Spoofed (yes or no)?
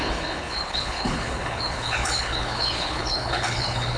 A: yes